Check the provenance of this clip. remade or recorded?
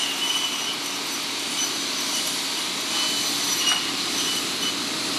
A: recorded